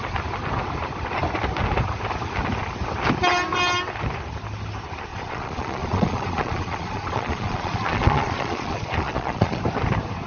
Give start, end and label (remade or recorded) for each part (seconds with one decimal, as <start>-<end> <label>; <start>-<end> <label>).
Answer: 0.0-5.1 recorded; 5.1-9.6 remade; 9.6-10.3 recorded